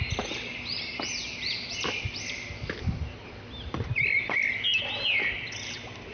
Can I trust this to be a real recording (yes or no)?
yes